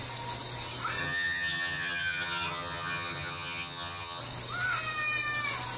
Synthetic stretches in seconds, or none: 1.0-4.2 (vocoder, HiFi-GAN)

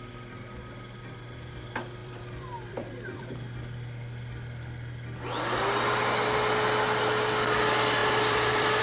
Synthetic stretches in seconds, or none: 2.0-3.3 (vocoder, BigVGAN v2); 8.0-8.8

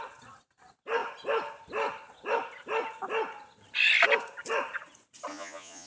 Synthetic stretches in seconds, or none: 5.3-5.9 (vocoder, Vocos)

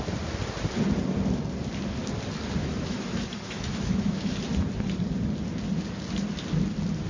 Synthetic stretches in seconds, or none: 2.6-4.3 (autoencoder, DAC-VAE)

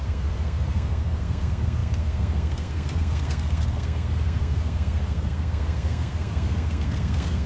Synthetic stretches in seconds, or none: 0.0-7.5 (codec, SNAC)

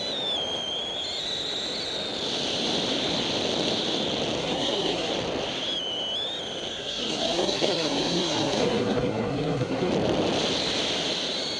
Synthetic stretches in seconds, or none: 4.4-5.1 (codec, SNAC); 6.7-9.9